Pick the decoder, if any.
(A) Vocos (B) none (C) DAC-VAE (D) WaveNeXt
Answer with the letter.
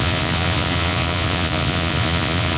A